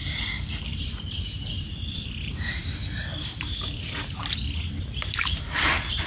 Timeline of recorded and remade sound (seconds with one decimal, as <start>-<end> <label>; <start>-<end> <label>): 0.0-0.7 recorded; 0.7-2.6 remade; 2.6-4.8 recorded; 4.8-6.1 remade